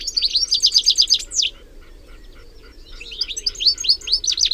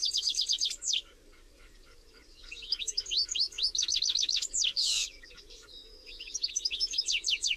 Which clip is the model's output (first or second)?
second